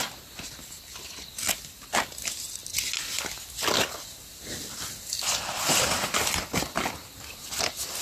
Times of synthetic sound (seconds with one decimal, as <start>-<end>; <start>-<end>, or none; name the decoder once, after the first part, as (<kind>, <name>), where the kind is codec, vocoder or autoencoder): none